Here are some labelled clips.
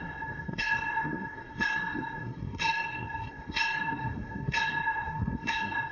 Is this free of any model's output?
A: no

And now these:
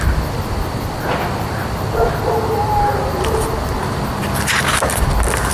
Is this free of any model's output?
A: yes